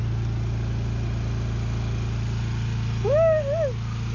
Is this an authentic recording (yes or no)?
yes